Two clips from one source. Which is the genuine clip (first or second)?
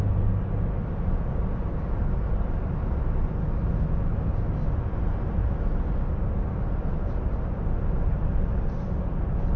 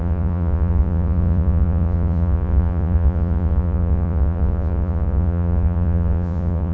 first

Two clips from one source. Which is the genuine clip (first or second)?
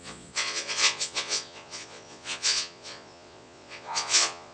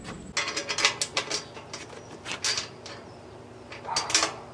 second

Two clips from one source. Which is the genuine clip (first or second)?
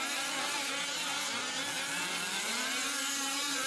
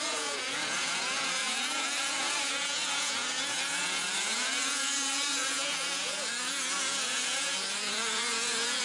first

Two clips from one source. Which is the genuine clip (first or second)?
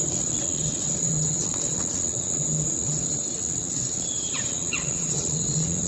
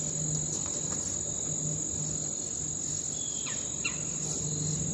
second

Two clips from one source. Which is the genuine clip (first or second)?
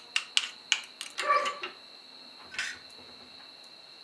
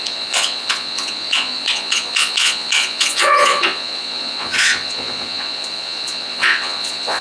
first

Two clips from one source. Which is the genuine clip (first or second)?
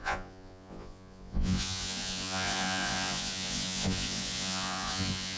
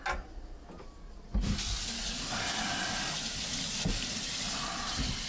second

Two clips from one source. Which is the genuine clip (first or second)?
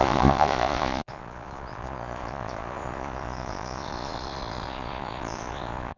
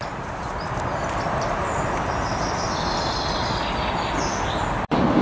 second